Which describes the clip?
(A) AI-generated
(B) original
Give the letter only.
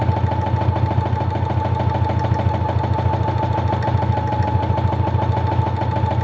B